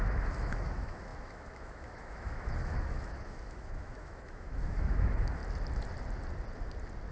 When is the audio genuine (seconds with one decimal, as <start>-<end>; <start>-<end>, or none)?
5.4-7.1